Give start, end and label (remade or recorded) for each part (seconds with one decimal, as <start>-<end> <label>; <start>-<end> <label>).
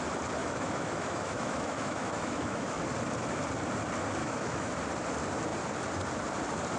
0.0-0.4 recorded; 0.4-2.8 remade; 2.8-4.2 recorded; 4.2-4.7 remade; 4.7-6.8 recorded